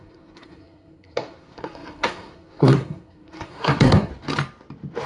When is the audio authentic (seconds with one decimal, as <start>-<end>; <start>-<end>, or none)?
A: 4.1-5.1